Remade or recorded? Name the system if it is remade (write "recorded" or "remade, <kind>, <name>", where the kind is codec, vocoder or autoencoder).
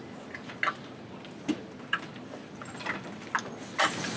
recorded